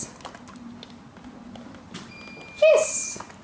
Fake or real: real